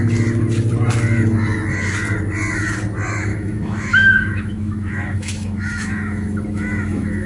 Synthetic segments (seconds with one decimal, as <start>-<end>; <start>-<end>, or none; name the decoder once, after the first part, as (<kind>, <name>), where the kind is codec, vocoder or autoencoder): 3.3-7.3 (autoencoder, DAC-VAE)

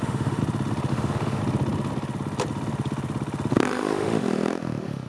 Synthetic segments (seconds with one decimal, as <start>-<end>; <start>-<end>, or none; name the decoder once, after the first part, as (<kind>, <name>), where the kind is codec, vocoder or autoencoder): 0.0-0.4 (autoencoder, DAC-VAE); 0.9-1.4; 3.5-5.1

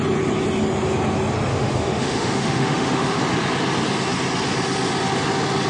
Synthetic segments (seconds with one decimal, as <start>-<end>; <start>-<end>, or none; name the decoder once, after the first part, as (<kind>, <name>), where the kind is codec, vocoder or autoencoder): 1.5-3.2 (autoencoder, DAC-VAE)